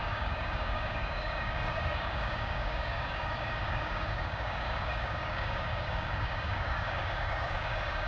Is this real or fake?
fake